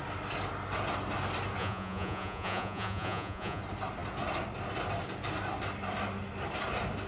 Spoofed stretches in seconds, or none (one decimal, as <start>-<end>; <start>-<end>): 1.6-3.6

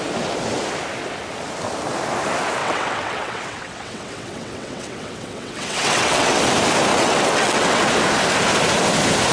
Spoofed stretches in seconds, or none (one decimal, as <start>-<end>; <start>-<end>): 2.6-6.5; 6.9-7.8

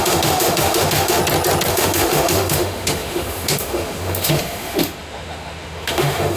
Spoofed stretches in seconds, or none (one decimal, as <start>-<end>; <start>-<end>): 0.0-1.2; 1.7-6.4

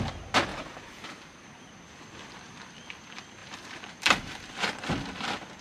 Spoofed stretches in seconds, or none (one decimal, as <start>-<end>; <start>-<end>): 0.5-1.7; 3.4-4.3

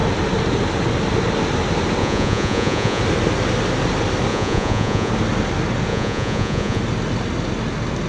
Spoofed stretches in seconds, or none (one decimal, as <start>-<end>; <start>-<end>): 2.0-3.0; 4.3-5.1; 5.9-6.8

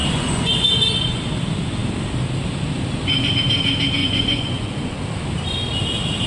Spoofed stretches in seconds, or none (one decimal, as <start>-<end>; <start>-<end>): 0.0-1.2; 4.0-5.0

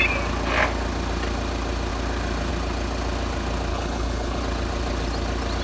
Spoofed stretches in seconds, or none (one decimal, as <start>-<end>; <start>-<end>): 3.7-4.4

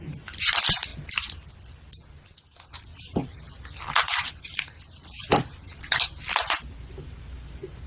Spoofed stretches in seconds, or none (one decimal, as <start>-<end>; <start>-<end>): 2.9-6.9